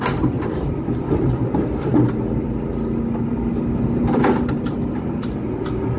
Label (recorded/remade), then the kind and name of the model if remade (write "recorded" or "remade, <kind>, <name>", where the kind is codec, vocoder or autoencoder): recorded